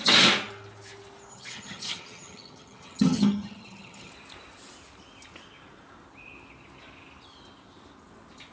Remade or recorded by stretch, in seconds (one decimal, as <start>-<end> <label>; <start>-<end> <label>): 0.0-1.3 recorded; 1.3-4.1 remade; 4.1-8.5 recorded

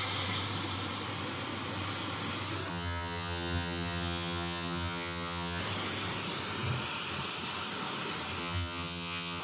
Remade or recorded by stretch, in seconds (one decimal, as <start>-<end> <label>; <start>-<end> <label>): 0.0-2.7 recorded; 2.7-5.6 remade; 5.6-8.4 recorded; 8.4-9.4 remade